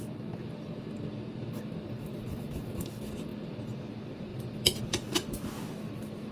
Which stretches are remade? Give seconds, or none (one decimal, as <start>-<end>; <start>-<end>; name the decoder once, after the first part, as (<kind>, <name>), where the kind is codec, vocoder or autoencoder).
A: 4.3-4.8 (vocoder, BigVGAN v2)